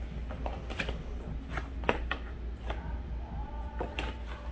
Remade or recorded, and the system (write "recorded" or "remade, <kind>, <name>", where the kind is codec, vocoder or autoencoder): recorded